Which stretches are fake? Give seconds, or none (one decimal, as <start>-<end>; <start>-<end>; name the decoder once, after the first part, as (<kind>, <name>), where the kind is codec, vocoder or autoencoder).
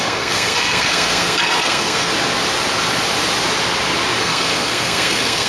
0.0-2.1 (codec, SNAC); 4.2-5.5